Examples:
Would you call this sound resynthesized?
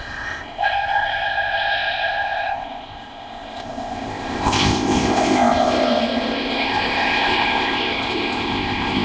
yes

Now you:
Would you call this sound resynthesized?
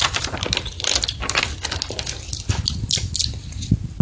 no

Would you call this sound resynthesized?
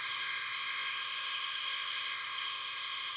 yes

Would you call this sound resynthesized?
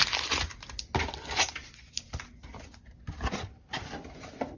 no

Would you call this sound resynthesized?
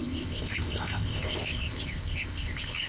yes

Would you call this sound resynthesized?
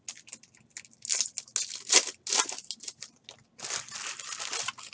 no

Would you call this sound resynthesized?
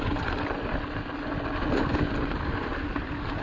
no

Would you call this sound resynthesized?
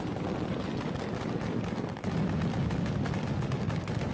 no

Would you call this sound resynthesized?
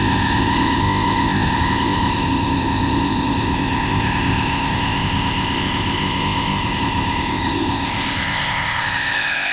yes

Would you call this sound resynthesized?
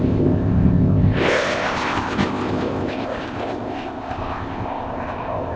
yes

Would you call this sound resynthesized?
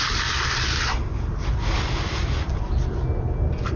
no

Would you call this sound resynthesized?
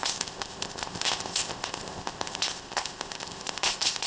yes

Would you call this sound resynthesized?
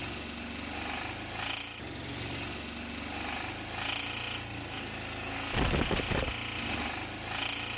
no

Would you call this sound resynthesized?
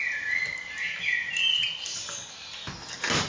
no